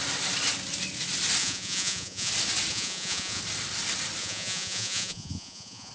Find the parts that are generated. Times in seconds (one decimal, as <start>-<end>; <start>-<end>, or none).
1.4-2.3; 2.7-3.4; 4.2-5.9